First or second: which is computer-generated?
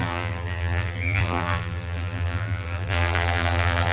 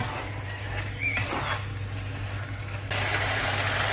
first